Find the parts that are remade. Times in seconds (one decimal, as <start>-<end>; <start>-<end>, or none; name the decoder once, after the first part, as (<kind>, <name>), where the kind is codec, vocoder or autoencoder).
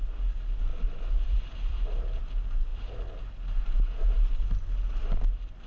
0.7-2.2 (vocoder, BigVGAN v2)